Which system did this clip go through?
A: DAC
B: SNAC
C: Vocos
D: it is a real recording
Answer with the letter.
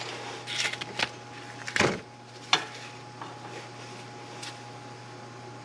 D